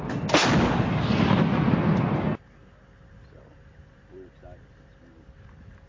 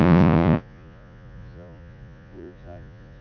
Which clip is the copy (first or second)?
second